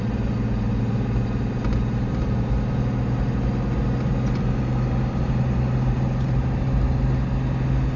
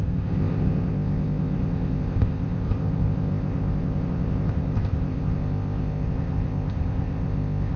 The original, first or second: first